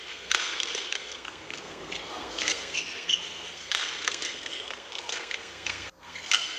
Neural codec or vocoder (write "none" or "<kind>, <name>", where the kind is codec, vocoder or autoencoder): codec, SNAC